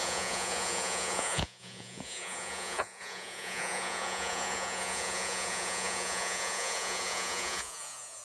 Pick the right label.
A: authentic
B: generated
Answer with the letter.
B